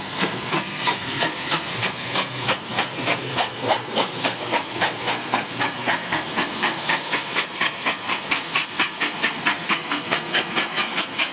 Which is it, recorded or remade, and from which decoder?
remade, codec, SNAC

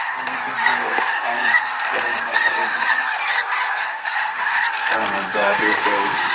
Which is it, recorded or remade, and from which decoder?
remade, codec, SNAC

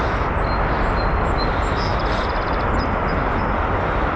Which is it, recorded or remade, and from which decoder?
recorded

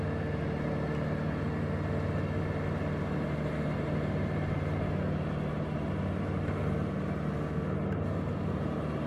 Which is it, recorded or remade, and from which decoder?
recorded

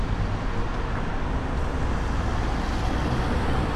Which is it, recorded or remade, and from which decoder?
recorded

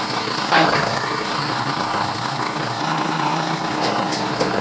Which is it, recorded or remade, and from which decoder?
remade, codec, SNAC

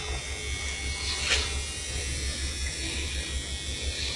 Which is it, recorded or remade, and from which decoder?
recorded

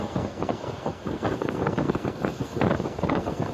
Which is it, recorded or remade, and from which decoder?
remade, codec, SNAC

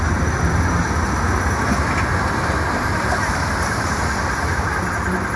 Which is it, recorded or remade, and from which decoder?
recorded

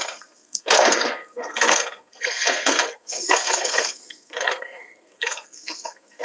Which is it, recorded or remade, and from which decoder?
remade, codec, SNAC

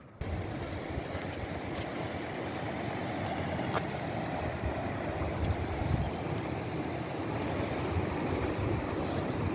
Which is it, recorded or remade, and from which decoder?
recorded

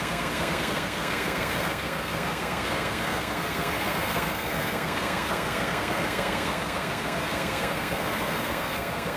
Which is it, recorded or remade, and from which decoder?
remade, codec, SNAC